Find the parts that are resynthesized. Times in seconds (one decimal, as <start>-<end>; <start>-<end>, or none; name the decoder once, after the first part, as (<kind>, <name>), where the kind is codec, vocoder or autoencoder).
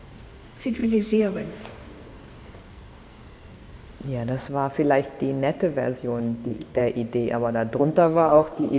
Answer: 0.0-3.9 (codec, SNAC); 6.2-6.8; 7.8-8.8